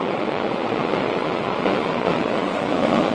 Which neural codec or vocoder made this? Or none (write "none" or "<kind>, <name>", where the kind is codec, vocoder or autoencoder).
vocoder, Vocos